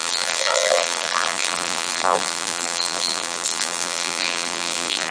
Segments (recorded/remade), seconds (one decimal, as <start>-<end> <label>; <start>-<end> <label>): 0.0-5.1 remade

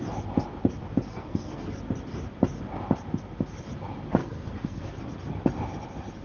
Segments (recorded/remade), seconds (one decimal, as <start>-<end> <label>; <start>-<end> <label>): 0.0-1.1 recorded; 1.1-1.7 remade; 1.7-4.2 recorded; 4.2-5.0 remade; 5.0-6.2 recorded

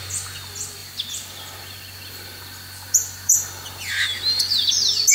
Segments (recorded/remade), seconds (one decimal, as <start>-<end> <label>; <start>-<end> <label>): 0.0-0.8 recorded; 0.8-3.9 remade; 3.9-5.1 recorded